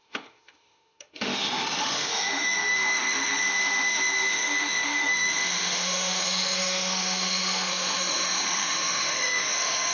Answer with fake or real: fake